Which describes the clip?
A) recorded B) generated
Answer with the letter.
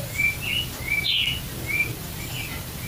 A